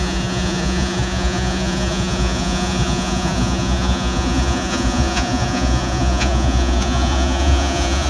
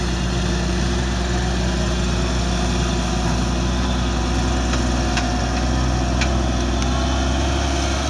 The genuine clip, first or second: second